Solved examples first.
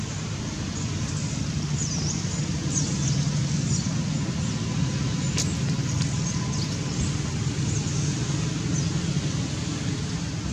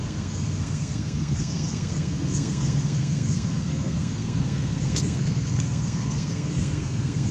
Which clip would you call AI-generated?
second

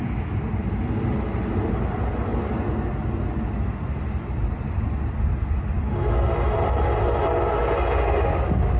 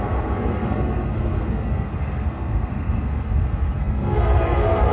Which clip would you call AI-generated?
second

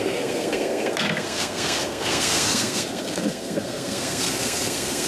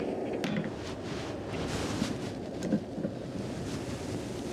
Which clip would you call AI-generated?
first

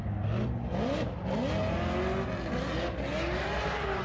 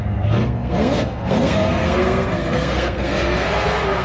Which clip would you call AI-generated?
second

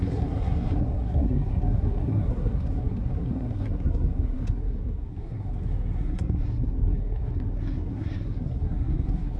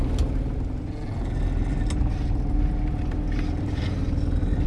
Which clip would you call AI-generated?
first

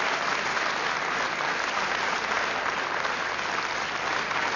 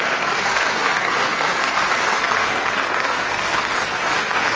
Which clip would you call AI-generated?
second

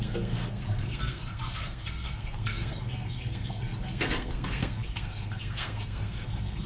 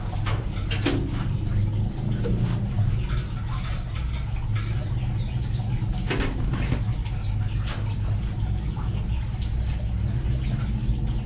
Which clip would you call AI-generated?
first